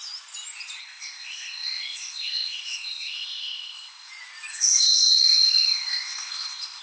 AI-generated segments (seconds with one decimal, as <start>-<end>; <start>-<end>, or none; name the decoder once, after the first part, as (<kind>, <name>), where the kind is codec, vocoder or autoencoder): 0.8-4.1 (codec, ZipCodec); 4.5-6.8